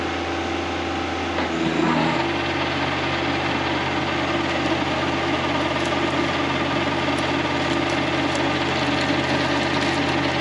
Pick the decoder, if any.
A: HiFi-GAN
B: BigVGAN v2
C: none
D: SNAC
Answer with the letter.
C